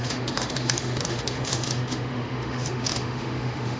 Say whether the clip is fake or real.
fake